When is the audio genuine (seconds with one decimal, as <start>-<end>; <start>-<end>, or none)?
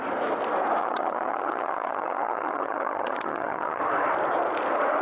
0.0-0.8; 3.8-5.0